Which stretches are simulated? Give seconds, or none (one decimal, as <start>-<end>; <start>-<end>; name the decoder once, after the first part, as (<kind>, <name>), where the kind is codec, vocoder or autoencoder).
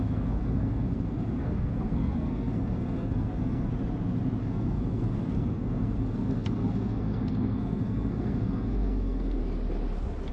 0.0-3.7 (codec, SNAC); 4.4-9.4